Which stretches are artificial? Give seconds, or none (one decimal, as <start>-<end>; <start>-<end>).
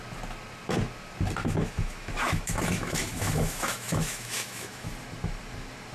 1.4-4.9